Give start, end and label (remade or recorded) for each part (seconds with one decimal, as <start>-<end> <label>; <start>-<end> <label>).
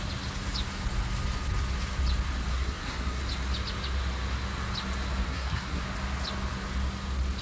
0.0-2.5 recorded; 2.5-3.2 remade; 3.2-5.3 recorded; 5.3-5.8 remade; 5.8-7.4 recorded